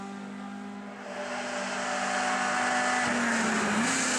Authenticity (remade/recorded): recorded